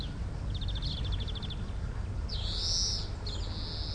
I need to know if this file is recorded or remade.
recorded